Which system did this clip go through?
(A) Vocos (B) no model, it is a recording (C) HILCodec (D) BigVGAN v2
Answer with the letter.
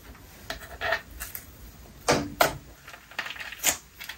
B